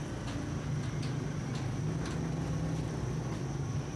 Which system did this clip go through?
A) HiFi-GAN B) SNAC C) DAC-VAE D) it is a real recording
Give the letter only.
D